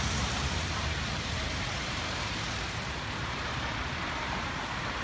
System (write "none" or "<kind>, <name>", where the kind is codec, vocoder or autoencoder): vocoder, BigVGAN v2